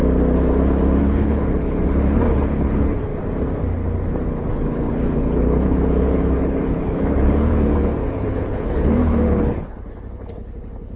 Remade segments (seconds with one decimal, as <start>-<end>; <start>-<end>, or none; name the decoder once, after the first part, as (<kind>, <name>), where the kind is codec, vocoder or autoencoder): 1.0-3.1 (codec, HILCodec); 4.5-11.0